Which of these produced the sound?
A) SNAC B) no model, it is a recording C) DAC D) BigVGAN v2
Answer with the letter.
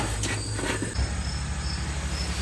B